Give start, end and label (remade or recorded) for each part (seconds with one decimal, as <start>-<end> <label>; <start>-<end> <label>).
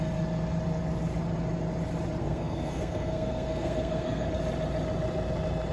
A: 0.0-2.2 recorded; 2.2-4.3 remade; 4.3-5.7 recorded